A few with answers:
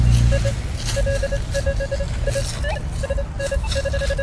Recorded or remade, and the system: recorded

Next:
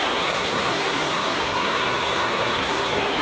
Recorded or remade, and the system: remade, codec, SNAC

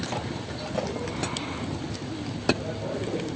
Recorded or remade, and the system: recorded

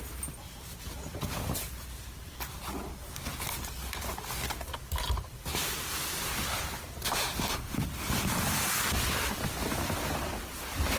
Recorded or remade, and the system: recorded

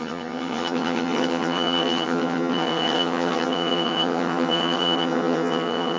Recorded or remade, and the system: remade, vocoder, HiFi-GAN